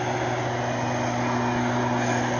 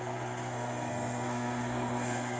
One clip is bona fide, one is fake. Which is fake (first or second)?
second